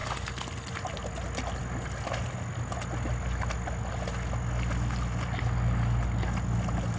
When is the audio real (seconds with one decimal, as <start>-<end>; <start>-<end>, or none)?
0.0-7.0